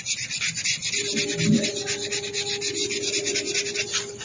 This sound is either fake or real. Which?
real